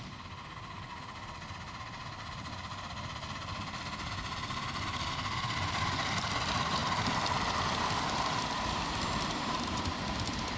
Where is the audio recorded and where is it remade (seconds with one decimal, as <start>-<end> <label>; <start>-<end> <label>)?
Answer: 0.0-6.8 remade; 6.8-8.0 recorded; 8.0-10.6 remade